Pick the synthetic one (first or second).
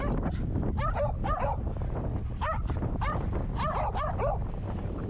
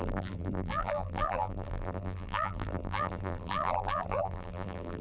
second